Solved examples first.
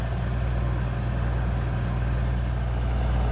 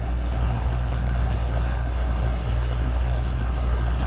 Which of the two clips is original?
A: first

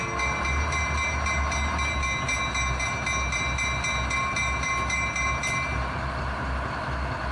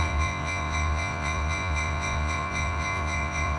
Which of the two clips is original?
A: first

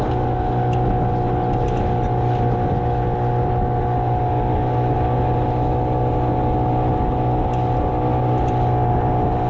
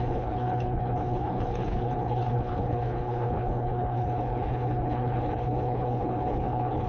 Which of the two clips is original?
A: first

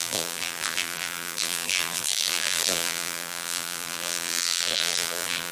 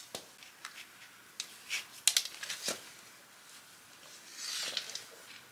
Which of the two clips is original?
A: second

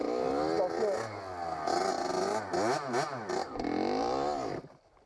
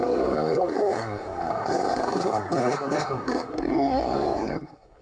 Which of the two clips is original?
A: first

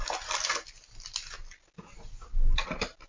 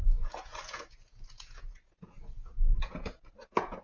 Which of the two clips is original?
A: first